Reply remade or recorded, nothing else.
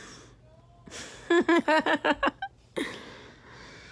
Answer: recorded